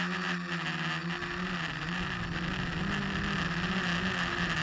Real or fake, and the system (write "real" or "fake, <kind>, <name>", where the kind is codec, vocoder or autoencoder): real